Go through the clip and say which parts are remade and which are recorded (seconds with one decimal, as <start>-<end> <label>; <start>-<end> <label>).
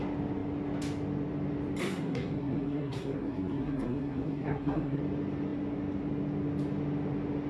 0.0-1.8 recorded; 1.8-5.0 remade; 5.0-7.5 recorded